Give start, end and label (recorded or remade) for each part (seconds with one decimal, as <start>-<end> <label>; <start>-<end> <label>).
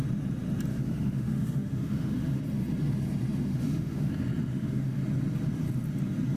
0.0-0.7 recorded; 0.7-2.4 remade; 2.4-3.5 recorded; 3.5-4.1 remade; 4.1-4.5 recorded; 4.5-5.0 remade; 5.0-6.4 recorded